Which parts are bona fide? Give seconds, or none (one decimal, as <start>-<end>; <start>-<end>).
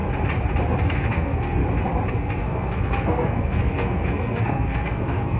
0.0-0.8; 1.6-2.1